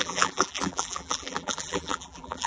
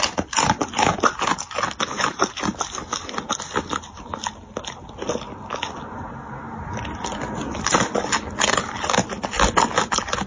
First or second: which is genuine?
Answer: second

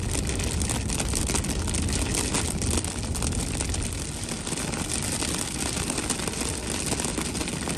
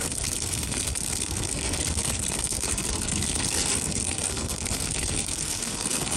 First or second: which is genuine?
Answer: first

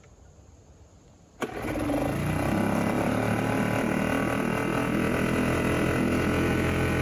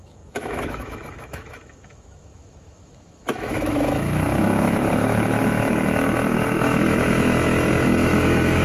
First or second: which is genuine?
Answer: first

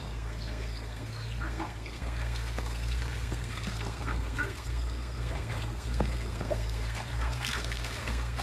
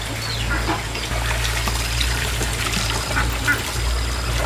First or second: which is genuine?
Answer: second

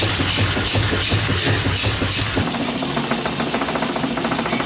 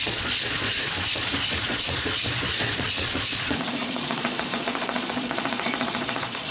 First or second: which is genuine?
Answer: first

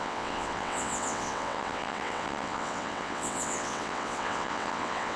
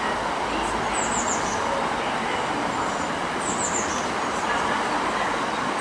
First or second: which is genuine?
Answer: second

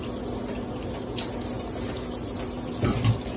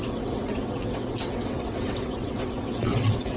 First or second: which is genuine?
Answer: first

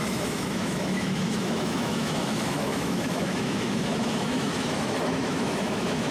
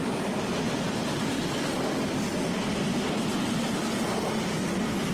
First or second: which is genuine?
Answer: second